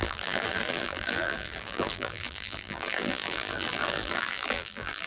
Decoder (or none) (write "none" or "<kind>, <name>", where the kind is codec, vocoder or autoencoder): vocoder, BigVGAN v2